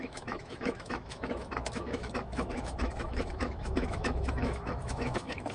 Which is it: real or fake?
fake